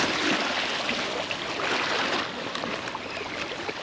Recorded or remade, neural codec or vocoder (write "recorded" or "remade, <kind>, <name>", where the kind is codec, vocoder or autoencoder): recorded